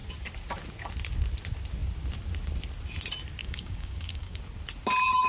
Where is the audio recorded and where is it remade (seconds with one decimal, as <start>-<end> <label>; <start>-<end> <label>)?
0.0-3.4 recorded; 3.4-4.4 remade; 4.4-5.3 recorded

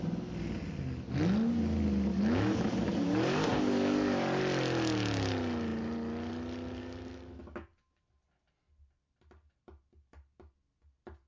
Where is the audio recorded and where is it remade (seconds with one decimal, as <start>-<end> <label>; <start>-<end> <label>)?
0.0-2.1 recorded; 2.1-4.4 remade; 4.4-6.8 recorded; 6.8-8.0 remade; 8.0-11.3 recorded

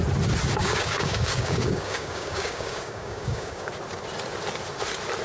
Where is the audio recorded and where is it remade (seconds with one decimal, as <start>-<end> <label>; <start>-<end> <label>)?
0.0-0.6 recorded; 0.6-3.7 remade; 3.7-5.2 recorded

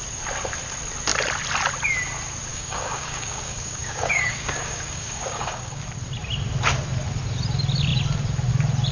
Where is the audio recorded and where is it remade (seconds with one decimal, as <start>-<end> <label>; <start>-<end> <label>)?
0.0-2.5 recorded; 2.5-5.8 remade; 5.8-8.9 recorded

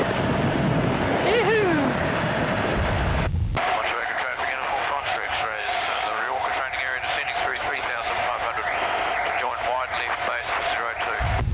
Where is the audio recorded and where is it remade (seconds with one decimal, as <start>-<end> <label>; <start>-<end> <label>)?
0.0-3.1 recorded; 3.1-6.5 remade; 6.5-7.5 recorded; 7.5-8.3 remade; 8.3-11.5 recorded

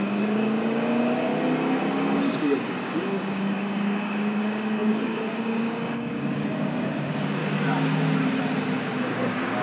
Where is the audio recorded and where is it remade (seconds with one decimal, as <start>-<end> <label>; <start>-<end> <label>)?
0.0-1.3 remade; 1.3-1.8 recorded; 1.8-7.4 remade; 7.4-8.8 recorded; 8.8-9.6 remade

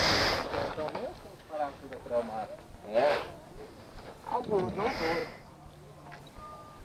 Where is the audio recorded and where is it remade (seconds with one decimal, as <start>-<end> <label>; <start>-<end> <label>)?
0.0-0.6 recorded; 0.6-1.9 remade; 1.9-6.8 recorded

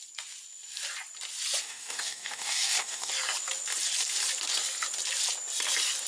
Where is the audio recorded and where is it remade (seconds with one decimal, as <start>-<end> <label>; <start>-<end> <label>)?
0.0-1.6 recorded; 1.6-3.1 remade; 3.1-6.1 recorded